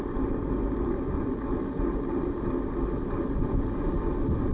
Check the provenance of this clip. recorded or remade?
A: recorded